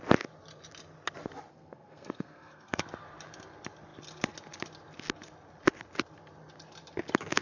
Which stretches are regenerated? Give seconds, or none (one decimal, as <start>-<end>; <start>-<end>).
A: 1.5-2.8